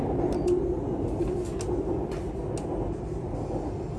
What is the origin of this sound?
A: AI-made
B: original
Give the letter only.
B